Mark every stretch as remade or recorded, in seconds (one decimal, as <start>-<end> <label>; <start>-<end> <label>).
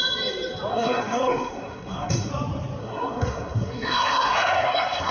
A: 0.0-0.7 recorded; 0.7-2.3 remade; 2.3-2.8 recorded; 2.8-5.1 remade